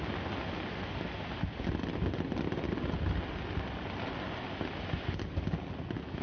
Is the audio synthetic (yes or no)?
no